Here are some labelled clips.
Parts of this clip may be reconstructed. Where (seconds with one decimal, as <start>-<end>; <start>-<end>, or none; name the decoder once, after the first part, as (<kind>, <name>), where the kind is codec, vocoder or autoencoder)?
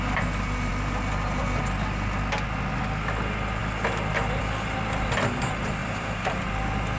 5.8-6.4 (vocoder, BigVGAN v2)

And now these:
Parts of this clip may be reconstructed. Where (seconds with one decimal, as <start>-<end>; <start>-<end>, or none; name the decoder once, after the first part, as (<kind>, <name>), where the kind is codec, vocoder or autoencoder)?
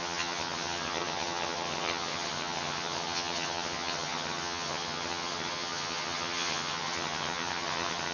0.0-8.1 (vocoder, HiFi-GAN)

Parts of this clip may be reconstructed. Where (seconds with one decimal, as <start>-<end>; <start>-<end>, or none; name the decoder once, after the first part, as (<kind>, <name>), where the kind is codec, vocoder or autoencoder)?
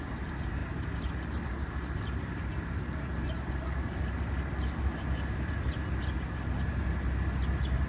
none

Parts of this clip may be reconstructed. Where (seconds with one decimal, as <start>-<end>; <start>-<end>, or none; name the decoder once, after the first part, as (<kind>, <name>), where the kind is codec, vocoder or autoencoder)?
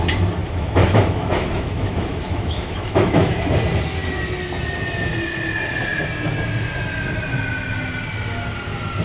0.4-3.5 (autoencoder, DAC-VAE)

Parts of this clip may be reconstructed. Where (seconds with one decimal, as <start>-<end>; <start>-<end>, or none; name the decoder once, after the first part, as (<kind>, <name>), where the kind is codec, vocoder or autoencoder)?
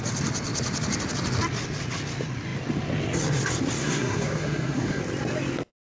3.8-5.0 (codec, SNAC)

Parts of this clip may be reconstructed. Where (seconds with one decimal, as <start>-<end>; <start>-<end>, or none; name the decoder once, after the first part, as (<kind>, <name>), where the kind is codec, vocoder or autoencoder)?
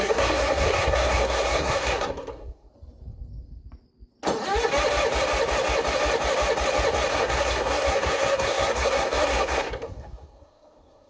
0.0-2.7 (codec, SNAC); 7.1-11.1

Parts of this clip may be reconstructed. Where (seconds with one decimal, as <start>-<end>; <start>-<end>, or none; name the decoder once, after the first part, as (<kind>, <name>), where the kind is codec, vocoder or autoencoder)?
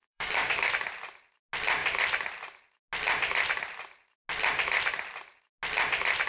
0.0-0.7 (codec, DAC)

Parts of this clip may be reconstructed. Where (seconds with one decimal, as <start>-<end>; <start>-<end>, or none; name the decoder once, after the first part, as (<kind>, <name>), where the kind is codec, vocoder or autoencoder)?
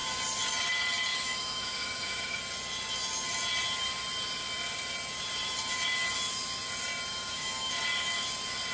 1.1-2.4 (autoencoder, DAC-VAE); 7.1-7.7